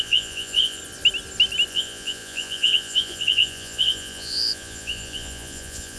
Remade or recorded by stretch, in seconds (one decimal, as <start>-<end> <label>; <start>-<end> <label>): 0.0-0.8 remade; 0.8-1.7 recorded; 1.7-6.0 remade